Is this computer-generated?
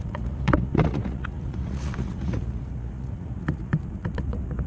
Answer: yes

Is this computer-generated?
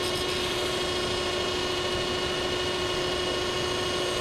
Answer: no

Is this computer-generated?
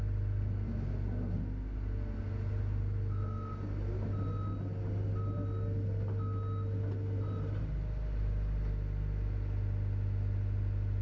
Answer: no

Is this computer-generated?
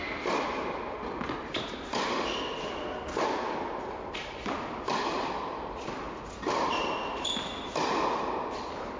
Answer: no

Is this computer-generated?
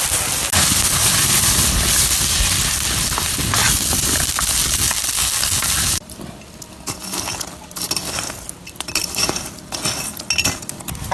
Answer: no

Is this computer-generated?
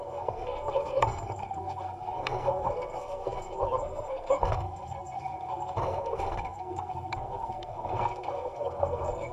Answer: yes